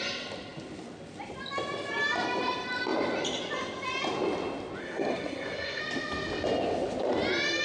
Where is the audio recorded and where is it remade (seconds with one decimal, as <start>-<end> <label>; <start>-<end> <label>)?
0.0-4.8 recorded; 4.8-5.8 remade; 5.8-7.6 recorded